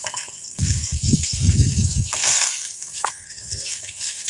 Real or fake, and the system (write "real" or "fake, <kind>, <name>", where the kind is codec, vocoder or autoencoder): fake, codec, SNAC